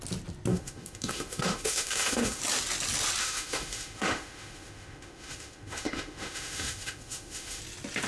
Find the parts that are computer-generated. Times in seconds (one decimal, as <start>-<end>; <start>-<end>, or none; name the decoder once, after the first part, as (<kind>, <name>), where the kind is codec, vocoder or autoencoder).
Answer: 0.5-2.4 (autoencoder, DAC-VAE); 3.2-7.6